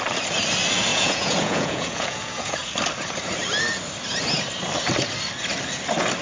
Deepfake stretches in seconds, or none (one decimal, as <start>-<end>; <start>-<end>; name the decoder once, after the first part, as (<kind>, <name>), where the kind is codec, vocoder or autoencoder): 0.9-2.7 (vocoder, Vocos)